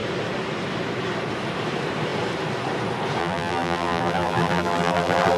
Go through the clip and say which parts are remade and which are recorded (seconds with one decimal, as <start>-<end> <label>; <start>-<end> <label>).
0.0-3.2 recorded; 3.2-5.4 remade